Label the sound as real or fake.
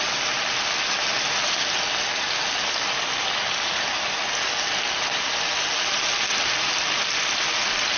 real